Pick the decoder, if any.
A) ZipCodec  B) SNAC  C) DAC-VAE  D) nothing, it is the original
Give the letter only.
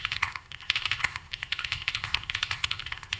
A